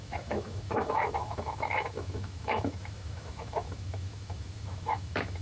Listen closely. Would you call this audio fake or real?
fake